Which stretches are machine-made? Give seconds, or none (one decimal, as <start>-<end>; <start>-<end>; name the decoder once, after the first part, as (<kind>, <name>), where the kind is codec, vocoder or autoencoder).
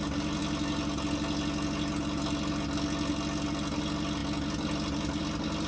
none